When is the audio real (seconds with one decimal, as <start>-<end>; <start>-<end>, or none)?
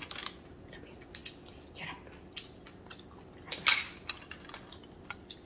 0.0-5.5